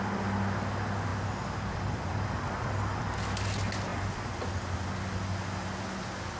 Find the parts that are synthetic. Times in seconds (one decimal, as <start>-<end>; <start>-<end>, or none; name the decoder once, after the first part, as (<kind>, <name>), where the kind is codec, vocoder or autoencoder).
none